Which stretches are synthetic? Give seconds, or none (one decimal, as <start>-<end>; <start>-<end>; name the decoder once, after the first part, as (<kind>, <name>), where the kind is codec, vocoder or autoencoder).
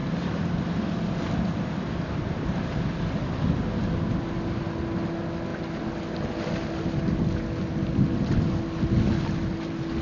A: 0.0-3.0 (vocoder, BigVGAN v2)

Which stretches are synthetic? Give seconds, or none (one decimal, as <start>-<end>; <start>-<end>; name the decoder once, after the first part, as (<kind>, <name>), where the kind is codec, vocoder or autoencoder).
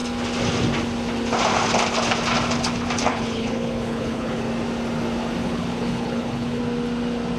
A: 3.1-4.5 (codec, HILCodec); 5.4-6.6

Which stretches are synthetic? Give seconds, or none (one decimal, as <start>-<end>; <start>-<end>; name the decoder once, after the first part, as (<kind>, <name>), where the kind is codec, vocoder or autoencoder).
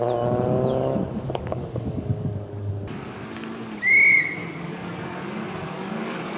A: 0.8-2.7 (codec, DAC); 4.4-6.4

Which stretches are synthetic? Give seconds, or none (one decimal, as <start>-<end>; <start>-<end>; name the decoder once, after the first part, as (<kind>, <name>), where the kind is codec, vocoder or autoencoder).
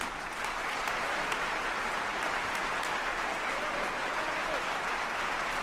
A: 0.0-2.1 (vocoder, BigVGAN v2); 3.5-4.4; 4.9-5.6